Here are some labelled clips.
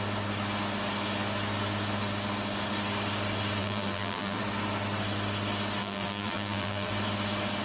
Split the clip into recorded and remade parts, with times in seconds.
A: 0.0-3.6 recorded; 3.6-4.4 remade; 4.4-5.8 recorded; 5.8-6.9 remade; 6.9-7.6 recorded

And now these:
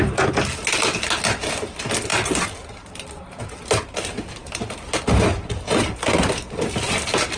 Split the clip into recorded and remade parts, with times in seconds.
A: 0.0-7.4 recorded

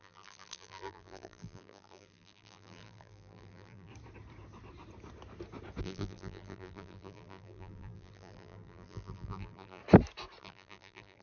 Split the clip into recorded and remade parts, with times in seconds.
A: 0.0-3.9 remade; 3.9-5.8 recorded; 5.8-9.8 remade; 9.8-10.4 recorded; 10.4-11.2 remade

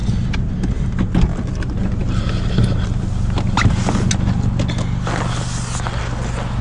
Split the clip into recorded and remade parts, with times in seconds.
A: 0.0-6.6 recorded

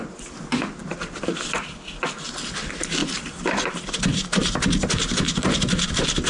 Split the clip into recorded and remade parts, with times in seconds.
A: 0.0-0.8 recorded; 0.8-1.3 remade; 1.3-3.0 recorded; 3.0-4.0 remade; 4.0-6.3 recorded